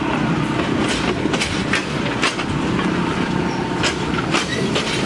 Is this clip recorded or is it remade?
recorded